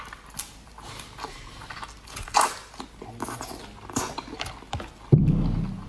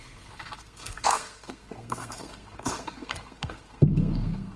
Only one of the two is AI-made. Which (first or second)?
second